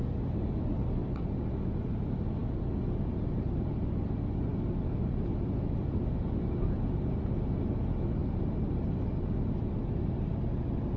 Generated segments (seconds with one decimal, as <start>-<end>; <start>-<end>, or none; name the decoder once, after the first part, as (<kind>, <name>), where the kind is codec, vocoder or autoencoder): none